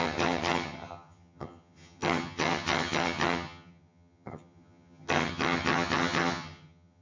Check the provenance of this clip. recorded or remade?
remade